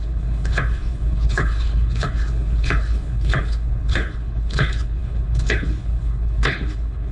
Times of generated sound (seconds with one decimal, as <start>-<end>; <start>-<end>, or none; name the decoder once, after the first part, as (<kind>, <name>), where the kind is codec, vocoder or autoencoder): 0.0-7.1 (codec, HILCodec)

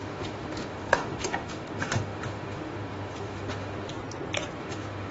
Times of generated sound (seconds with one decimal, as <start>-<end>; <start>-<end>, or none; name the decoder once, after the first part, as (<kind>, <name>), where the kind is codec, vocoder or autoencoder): 0.0-3.9 (autoencoder, DAC-VAE); 4.6-5.1

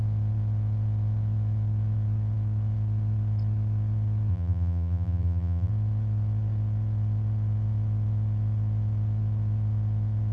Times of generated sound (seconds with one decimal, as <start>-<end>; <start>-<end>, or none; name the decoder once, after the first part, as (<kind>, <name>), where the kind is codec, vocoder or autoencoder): 4.3-5.7 (vocoder, BigVGAN v2)

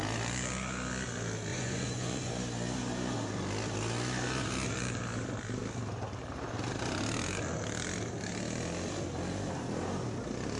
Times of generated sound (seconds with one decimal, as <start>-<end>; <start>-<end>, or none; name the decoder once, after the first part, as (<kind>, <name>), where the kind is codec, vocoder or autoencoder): 1.5-2.3 (vocoder, Vocos)

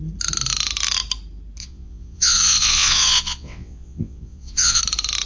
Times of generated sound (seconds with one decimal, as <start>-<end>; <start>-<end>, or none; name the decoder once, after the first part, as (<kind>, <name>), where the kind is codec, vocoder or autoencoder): 1.6-4.8 (vocoder, WaveNeXt)

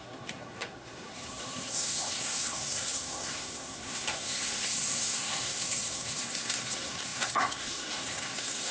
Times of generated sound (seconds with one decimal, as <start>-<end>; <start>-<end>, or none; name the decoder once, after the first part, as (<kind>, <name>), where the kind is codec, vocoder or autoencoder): 0.0-8.7 (codec, SNAC)

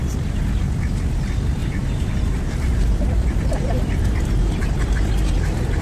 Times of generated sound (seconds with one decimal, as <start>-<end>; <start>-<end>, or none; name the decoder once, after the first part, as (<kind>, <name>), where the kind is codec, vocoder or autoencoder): 1.6-5.1 (vocoder, BigVGAN v2)